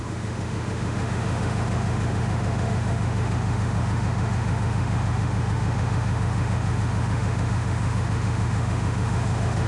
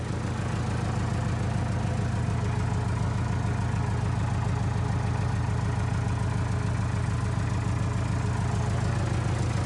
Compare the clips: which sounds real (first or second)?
second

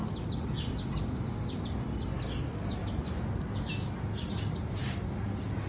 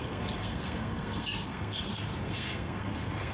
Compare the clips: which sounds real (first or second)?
first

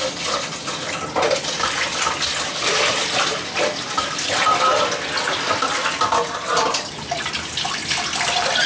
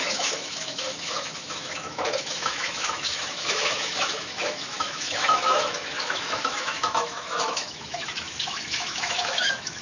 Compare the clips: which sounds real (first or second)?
first